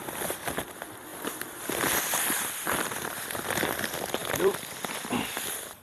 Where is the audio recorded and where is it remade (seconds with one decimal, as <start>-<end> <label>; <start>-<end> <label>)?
0.0-1.1 recorded; 1.1-2.0 remade; 2.0-4.2 recorded; 4.2-5.8 remade